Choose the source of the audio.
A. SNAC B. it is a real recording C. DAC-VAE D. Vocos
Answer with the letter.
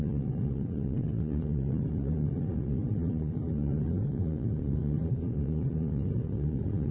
D